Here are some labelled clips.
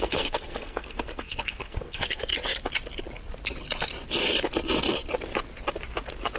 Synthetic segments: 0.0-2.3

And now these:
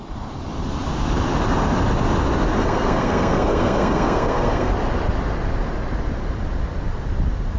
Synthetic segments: 2.6-4.7

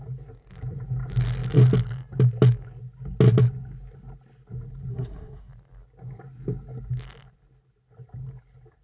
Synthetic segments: 4.9-5.5

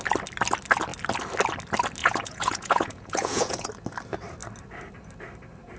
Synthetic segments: 2.0-3.7